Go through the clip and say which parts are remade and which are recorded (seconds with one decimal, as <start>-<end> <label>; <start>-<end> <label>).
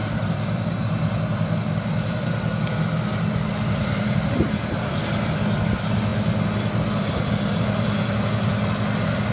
0.0-3.1 recorded; 3.1-4.8 remade; 4.8-9.3 recorded